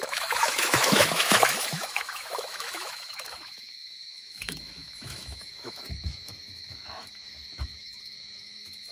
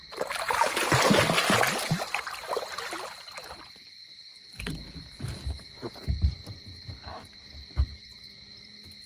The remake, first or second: first